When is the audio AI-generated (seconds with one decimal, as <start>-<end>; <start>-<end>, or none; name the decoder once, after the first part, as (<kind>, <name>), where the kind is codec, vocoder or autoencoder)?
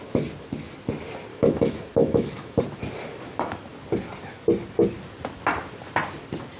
1.3-2.6 (autoencoder, DAC-VAE)